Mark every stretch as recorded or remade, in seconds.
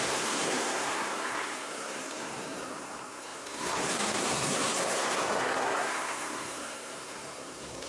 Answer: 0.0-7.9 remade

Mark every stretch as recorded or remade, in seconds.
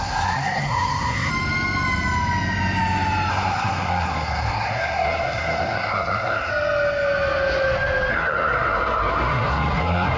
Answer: 0.0-1.3 remade; 1.3-3.3 recorded; 3.3-6.5 remade; 6.5-8.1 recorded; 8.1-10.2 remade